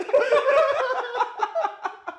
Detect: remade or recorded recorded